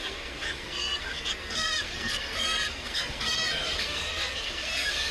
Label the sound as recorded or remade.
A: remade